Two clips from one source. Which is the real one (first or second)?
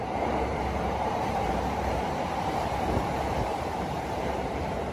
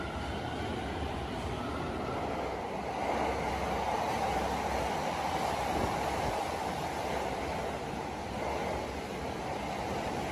second